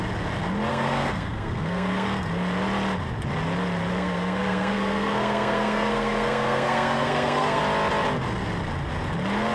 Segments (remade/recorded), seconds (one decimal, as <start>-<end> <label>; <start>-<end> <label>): 0.0-0.7 recorded; 0.7-2.3 remade; 2.3-3.9 recorded; 3.9-7.6 remade; 7.6-9.5 recorded